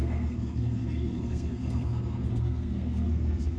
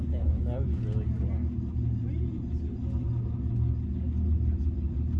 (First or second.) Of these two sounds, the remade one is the first